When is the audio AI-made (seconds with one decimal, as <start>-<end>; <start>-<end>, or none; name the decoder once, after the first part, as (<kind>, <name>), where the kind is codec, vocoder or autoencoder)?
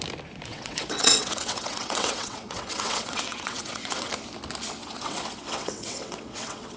0.5-4.1 (vocoder, WaveNeXt); 4.8-6.8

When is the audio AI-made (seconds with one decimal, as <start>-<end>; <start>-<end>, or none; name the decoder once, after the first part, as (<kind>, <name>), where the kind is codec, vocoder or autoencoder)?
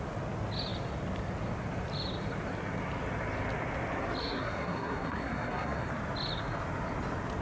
4.2-5.9 (codec, SNAC)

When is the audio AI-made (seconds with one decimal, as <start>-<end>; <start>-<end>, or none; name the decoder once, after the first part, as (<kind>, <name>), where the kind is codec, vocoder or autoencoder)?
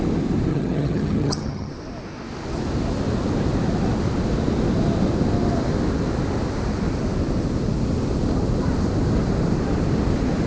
0.5-1.7 (vocoder, HiFi-GAN)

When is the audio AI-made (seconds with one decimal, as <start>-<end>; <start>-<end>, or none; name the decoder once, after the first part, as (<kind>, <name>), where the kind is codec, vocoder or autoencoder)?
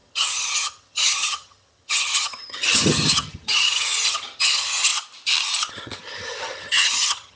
0.0-4.9 (vocoder, HiFi-GAN); 5.7-7.4